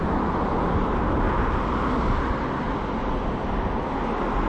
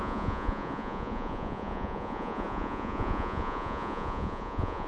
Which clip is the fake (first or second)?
second